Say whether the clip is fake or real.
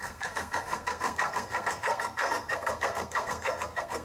fake